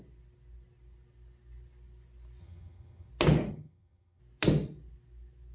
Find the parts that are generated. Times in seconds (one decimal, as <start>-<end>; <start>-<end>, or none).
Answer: 2.4-3.1; 3.5-4.2